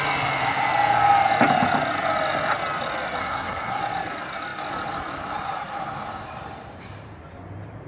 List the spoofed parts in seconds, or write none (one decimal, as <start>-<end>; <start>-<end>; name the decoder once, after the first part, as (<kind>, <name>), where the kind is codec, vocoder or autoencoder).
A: 3.2-3.8 (codec, SNAC)

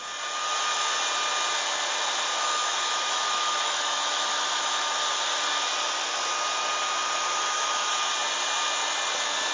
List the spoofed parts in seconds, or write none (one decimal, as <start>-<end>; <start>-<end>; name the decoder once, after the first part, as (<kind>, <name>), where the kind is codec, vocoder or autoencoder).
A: 2.3-5.1 (autoencoder, DAC-VAE); 7.4-8.0